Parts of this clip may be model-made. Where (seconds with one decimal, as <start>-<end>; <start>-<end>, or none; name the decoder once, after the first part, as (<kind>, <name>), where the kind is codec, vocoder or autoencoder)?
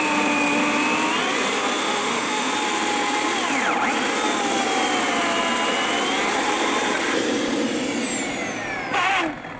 1.8-2.5 (autoencoder, DAC-VAE)